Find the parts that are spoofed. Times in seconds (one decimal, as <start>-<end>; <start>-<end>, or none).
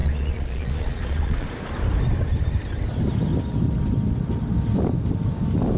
0.0-1.5